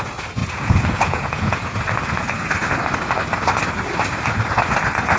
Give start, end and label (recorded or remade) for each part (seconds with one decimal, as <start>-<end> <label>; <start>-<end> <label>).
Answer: 0.0-0.4 recorded; 0.4-1.8 remade; 1.8-5.2 recorded